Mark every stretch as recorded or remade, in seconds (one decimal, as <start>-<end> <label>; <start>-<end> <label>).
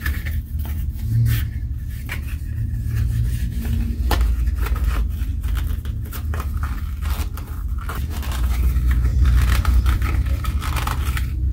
0.0-9.1 recorded; 9.1-10.4 remade; 10.4-11.5 recorded